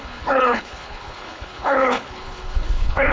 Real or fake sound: fake